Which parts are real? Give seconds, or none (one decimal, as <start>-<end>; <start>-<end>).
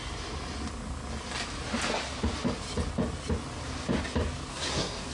0.0-4.5